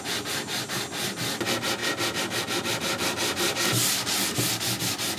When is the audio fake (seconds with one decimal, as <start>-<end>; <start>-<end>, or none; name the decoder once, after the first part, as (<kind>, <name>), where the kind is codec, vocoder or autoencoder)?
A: none